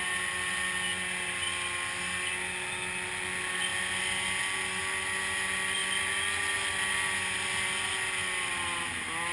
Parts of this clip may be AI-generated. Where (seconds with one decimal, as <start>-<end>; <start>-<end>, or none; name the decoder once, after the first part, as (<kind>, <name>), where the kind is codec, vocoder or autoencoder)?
none